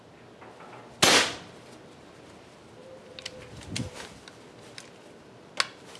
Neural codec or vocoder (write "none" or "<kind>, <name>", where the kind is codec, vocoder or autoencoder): none